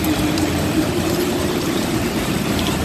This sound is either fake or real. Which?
fake